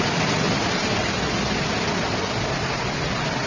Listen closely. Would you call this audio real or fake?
real